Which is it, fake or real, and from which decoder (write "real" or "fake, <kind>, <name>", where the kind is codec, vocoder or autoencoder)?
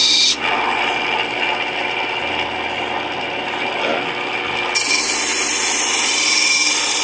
real